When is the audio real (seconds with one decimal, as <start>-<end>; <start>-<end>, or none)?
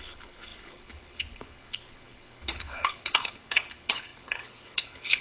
none